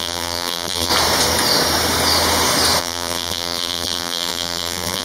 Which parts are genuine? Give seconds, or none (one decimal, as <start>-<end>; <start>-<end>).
0.9-2.8